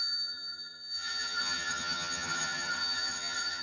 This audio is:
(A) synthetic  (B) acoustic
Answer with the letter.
A